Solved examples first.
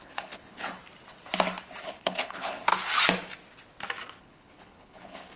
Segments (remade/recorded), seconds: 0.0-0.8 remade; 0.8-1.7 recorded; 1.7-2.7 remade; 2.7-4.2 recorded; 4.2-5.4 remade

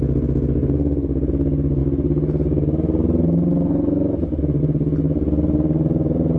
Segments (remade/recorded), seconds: 0.0-0.6 recorded; 0.6-1.3 remade; 1.3-6.4 recorded

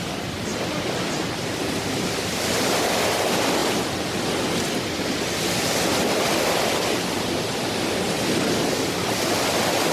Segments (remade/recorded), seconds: 0.0-9.9 recorded

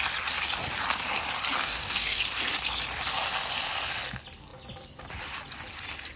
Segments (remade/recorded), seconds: 0.0-1.6 recorded; 1.6-2.2 remade; 2.2-6.2 recorded